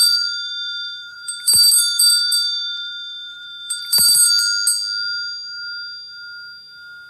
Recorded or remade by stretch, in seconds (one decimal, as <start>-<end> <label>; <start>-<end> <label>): 0.0-4.3 remade; 4.3-7.1 recorded